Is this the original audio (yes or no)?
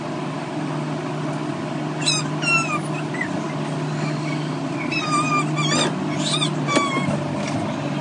yes